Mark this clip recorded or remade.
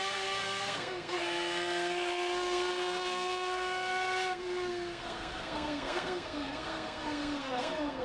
remade